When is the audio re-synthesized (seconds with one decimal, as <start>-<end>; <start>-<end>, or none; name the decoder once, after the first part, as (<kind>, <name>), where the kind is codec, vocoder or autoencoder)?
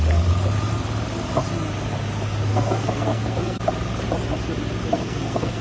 2.5-3.6 (codec, SNAC); 4.9-5.6